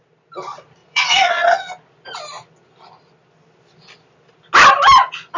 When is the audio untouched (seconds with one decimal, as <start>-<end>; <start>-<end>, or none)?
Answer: 0.0-0.8; 1.7-5.4